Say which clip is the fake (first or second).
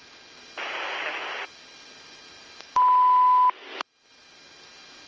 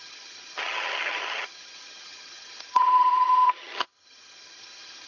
second